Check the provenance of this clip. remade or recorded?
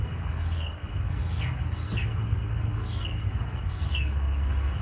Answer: remade